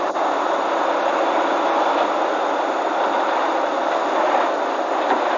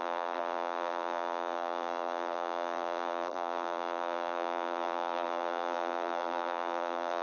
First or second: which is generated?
second